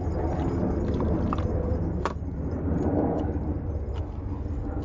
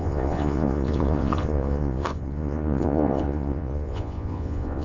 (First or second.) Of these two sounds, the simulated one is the second